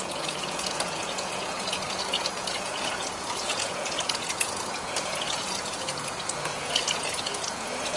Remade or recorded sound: remade